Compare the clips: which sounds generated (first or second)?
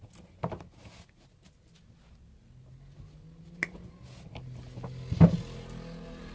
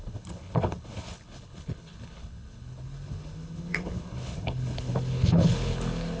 second